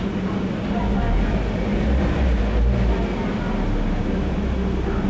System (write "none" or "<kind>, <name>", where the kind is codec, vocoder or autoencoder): none